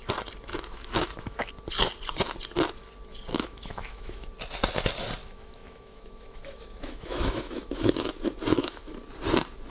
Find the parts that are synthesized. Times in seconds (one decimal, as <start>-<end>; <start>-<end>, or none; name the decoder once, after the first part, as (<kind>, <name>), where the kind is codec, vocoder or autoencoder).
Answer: 0.5-1.5 (autoencoder, DAC-VAE); 3.3-4.3; 5.2-8.1; 8.5-9.0